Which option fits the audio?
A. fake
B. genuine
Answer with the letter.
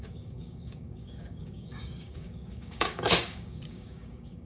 A